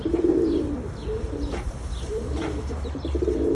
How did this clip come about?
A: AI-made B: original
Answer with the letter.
A